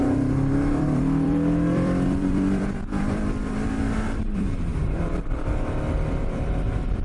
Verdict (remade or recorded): remade